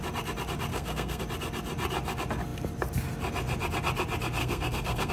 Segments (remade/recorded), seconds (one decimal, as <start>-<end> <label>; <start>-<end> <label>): 0.0-0.7 recorded; 0.7-1.2 remade; 1.2-4.4 recorded; 4.4-5.1 remade